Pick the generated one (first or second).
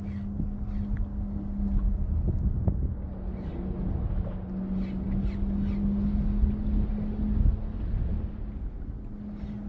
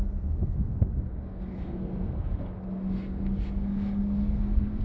second